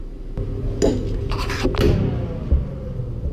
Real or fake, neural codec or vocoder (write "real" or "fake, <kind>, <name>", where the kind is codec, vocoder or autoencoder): real